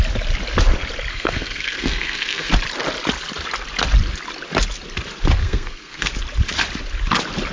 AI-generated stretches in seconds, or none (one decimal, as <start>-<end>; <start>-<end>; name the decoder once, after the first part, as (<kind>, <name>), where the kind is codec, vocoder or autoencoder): 1.1-2.5 (codec, SNAC); 5.4-6.1

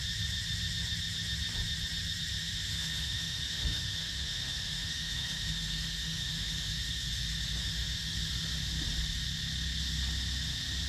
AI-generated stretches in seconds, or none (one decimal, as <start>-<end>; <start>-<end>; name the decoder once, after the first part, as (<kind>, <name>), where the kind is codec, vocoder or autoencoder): 2.4-7.1 (autoencoder, DAC-VAE); 7.6-8.2